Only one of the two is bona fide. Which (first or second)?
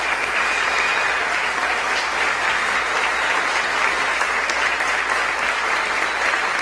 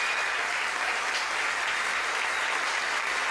first